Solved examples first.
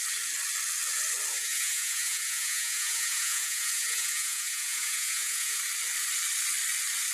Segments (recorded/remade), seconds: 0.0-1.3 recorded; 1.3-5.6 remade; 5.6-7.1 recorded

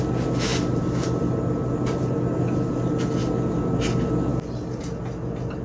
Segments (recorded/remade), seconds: 0.0-5.6 recorded